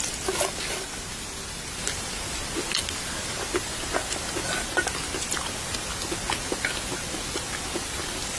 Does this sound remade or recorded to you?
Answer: recorded